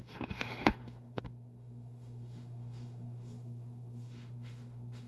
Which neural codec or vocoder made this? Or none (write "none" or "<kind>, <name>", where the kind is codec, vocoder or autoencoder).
autoencoder, DAC-VAE